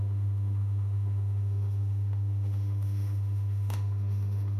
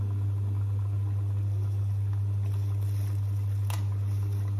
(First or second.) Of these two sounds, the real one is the second